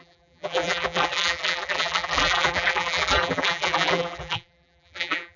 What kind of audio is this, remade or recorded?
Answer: remade